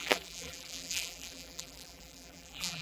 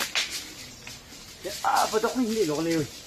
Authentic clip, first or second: second